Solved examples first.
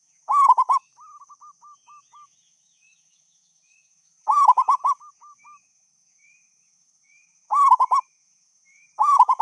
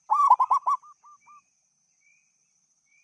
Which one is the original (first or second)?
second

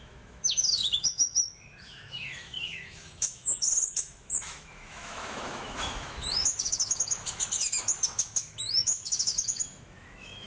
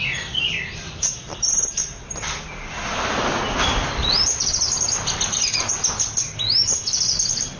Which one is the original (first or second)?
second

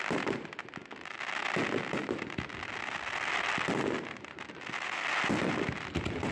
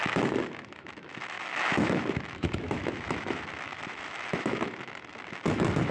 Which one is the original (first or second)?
first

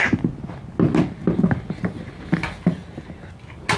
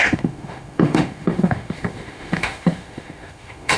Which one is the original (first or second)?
first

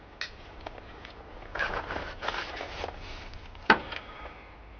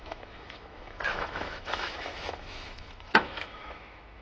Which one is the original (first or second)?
first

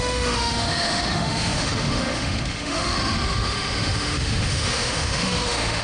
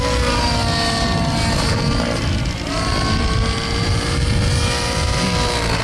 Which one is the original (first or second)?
second